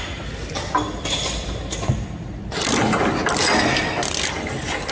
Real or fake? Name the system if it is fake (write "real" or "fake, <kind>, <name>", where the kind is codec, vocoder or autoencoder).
real